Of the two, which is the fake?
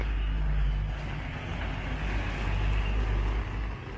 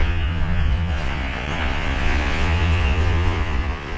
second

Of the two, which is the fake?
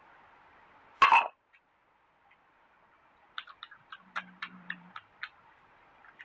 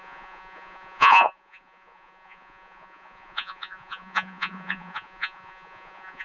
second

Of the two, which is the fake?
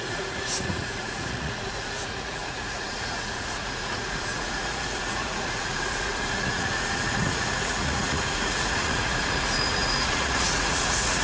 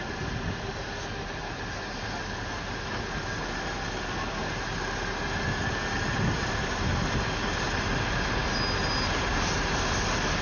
first